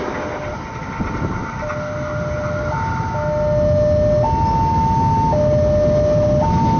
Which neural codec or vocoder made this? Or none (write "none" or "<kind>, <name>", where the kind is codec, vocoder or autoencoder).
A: none